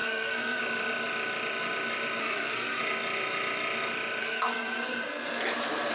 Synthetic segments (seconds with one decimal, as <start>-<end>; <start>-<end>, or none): 0.0-0.6; 2.2-2.8; 4.2-5.4